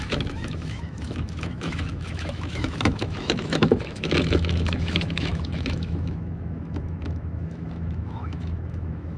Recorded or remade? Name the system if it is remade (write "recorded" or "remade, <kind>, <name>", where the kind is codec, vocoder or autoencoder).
remade, autoencoder, DAC-VAE